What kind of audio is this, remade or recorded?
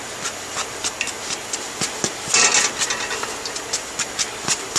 recorded